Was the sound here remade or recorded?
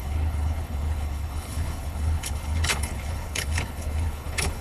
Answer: remade